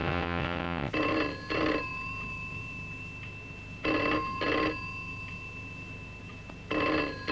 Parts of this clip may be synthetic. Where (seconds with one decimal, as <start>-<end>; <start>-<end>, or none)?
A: 0.0-0.9